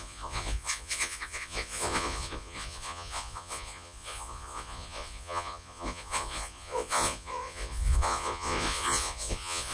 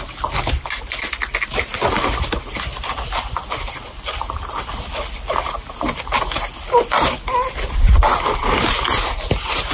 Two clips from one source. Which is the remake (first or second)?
first